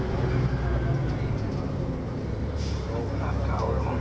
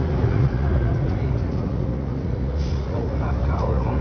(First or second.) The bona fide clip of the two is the first